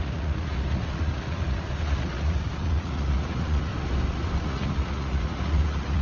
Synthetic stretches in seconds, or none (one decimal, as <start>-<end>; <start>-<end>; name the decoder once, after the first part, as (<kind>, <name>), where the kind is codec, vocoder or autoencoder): 0.0-3.7 (vocoder, Vocos); 4.4-6.0